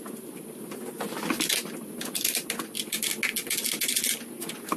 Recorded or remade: recorded